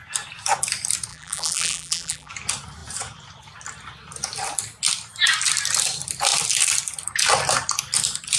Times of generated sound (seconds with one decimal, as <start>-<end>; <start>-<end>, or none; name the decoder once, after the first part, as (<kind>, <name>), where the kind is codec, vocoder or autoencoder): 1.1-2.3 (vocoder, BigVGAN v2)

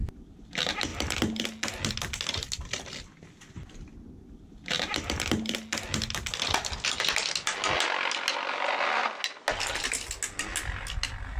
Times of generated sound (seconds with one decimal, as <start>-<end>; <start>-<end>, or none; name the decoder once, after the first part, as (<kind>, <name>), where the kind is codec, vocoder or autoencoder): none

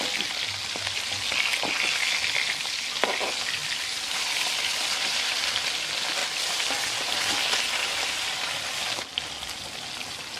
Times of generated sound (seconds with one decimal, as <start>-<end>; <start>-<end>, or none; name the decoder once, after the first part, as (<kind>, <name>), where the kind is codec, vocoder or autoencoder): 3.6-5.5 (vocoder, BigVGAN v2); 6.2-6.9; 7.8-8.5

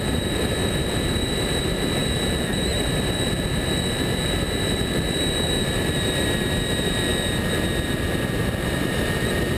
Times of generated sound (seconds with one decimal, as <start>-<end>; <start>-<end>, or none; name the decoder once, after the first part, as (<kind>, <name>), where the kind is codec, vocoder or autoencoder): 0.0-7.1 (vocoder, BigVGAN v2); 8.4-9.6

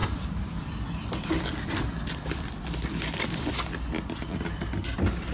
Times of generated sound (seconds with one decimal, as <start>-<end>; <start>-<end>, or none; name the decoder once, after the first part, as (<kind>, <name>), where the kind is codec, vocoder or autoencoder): 0.0-0.6 (vocoder, BigVGAN v2)